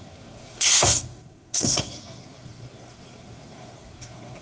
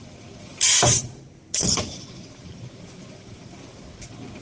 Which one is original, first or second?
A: second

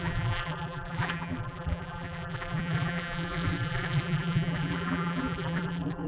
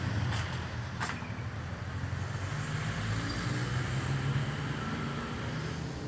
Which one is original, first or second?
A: second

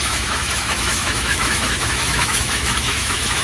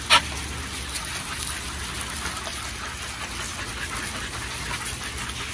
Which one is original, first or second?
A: second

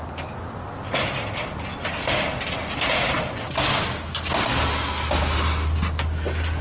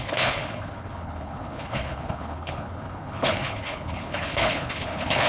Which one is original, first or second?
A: first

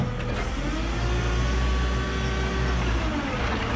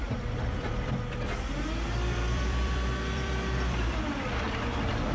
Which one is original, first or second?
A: first